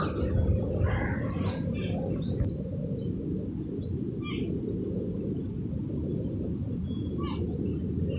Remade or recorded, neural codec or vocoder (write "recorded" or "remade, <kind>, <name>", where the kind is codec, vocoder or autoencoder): recorded